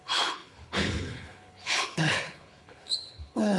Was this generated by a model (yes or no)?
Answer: yes